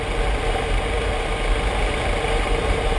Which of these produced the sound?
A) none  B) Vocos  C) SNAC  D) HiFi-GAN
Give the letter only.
A